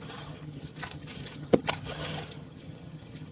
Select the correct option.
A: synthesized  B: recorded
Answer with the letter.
A